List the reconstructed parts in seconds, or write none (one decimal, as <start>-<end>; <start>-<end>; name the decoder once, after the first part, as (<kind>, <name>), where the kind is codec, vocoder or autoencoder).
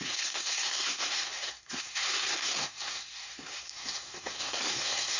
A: 0.0-5.2 (codec, SNAC)